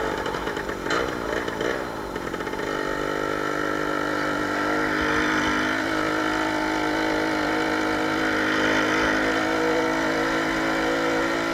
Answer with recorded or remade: recorded